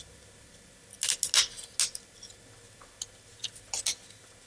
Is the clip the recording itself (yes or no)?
yes